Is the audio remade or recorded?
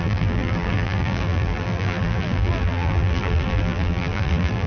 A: remade